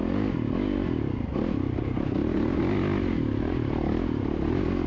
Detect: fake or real real